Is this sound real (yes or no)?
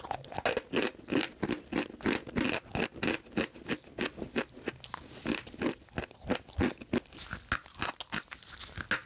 yes